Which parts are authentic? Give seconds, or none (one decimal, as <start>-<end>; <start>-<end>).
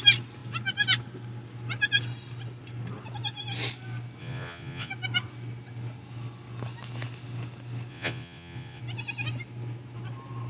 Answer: 0.0-4.2; 4.9-7.9; 8.8-10.5